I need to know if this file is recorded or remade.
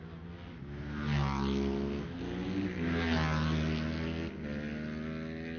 recorded